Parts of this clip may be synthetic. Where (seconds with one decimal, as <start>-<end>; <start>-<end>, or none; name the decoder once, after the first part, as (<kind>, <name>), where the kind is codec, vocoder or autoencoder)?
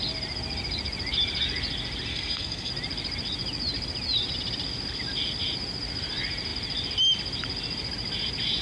2.1-2.7 (codec, SNAC)